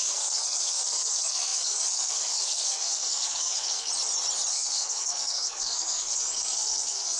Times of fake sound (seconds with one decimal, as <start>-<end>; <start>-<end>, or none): 0.0-3.9; 4.5-7.2